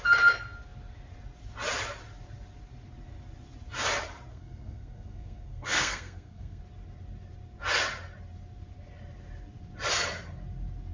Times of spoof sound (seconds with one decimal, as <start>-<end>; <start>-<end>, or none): 4.3-6.6